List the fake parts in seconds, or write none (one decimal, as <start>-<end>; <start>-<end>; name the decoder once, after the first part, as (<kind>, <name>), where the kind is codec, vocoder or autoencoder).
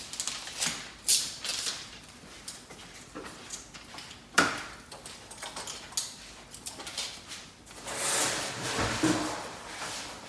1.5-4.7 (vocoder, BigVGAN v2); 6.9-7.5